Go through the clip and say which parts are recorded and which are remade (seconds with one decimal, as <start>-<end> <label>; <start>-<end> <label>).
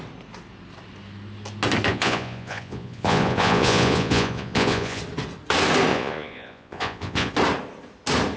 0.0-1.9 recorded; 1.9-5.0 remade; 5.0-5.9 recorded; 5.9-7.3 remade; 7.3-8.4 recorded